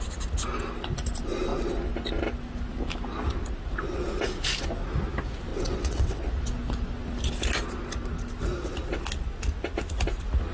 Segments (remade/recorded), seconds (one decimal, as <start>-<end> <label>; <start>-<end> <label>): 0.0-5.5 recorded; 5.5-6.3 remade; 6.3-10.5 recorded